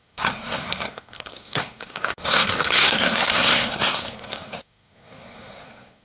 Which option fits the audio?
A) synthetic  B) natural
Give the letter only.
A